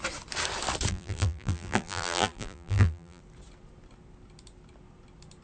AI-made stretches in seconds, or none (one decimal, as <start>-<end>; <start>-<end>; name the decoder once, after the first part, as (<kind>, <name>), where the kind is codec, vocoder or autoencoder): 0.9-3.2 (vocoder, BigVGAN v2)